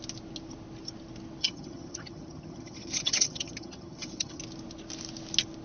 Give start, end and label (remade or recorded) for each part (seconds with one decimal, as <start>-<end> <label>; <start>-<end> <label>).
0.0-1.4 recorded; 1.4-4.4 remade; 4.4-5.6 recorded